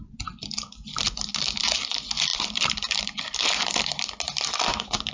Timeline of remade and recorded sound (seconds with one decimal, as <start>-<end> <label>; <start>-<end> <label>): 0.0-5.1 recorded